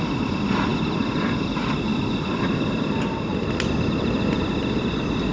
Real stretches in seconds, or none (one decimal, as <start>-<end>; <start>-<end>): 0.0-5.3